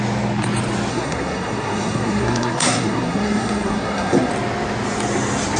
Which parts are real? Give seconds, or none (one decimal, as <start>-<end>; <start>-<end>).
0.0-0.9; 4.3-5.6